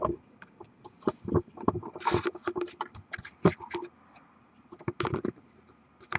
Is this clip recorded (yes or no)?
yes